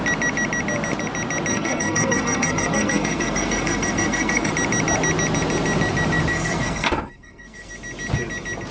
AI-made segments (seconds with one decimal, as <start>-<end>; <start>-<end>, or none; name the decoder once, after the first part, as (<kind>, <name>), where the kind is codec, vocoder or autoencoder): 1.5-4.5 (codec, SNAC); 6.3-7.7